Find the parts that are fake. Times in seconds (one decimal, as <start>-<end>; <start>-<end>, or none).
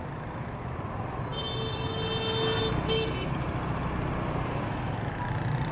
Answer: none